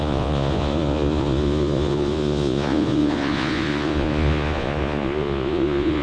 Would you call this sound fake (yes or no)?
yes